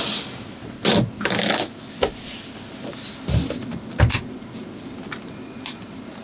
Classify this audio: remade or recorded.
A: recorded